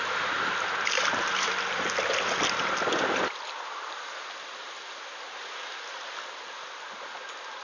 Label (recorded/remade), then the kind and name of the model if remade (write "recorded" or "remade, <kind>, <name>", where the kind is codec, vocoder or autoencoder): recorded